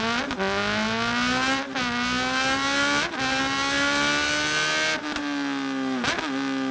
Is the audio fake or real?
real